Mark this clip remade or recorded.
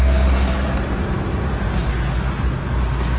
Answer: recorded